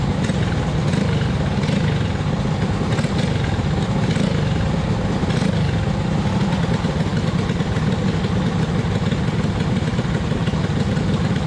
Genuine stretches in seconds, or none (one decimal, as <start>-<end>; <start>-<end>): 0.0-11.5